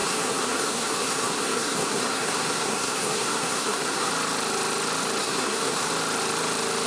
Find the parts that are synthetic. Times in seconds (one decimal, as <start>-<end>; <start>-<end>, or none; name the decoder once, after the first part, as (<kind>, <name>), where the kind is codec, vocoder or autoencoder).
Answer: 0.0-4.1 (codec, SNAC); 5.2-5.9